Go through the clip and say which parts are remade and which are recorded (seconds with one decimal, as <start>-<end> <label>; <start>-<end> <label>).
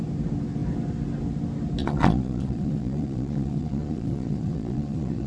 0.0-1.8 recorded; 1.8-5.3 remade